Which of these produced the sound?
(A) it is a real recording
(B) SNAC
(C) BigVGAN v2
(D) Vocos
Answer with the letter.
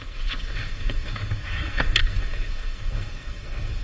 B